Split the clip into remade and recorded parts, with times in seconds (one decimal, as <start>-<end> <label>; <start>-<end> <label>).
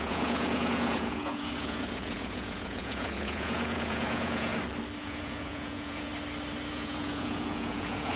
0.0-4.5 remade; 4.5-5.0 recorded; 5.0-6.1 remade; 6.1-6.7 recorded; 6.7-8.2 remade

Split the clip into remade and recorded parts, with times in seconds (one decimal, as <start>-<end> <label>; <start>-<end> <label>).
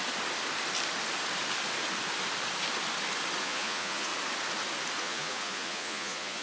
0.0-3.4 recorded; 3.4-4.1 remade; 4.1-5.0 recorded; 5.0-6.4 remade